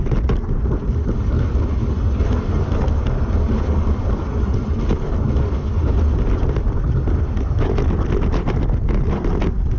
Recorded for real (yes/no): yes